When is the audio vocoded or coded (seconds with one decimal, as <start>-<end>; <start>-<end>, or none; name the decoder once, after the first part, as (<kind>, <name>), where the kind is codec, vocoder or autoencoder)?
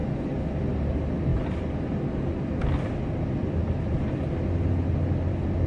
none